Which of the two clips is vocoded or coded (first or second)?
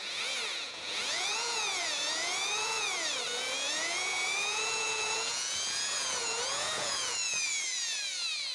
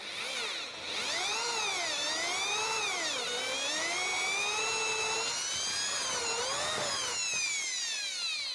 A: first